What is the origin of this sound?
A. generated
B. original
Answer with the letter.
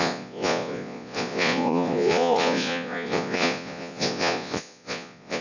A